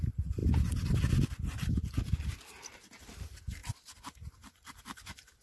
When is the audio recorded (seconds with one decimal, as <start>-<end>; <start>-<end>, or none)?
0.0-5.4